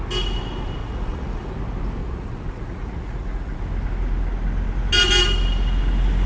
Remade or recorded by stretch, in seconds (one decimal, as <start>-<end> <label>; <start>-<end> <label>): 0.0-0.8 recorded; 0.8-1.5 remade; 1.5-2.0 recorded; 2.0-3.6 remade; 3.6-6.3 recorded